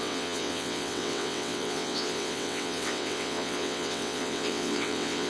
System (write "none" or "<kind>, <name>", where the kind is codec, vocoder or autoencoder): vocoder, WaveNeXt